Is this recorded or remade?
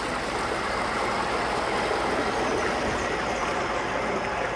recorded